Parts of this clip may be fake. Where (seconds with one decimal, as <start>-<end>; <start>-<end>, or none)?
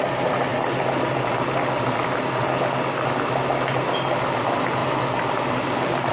none